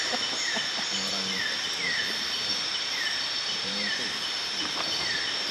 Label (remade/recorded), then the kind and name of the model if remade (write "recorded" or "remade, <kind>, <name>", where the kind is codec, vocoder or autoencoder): remade, vocoder, BigVGAN v2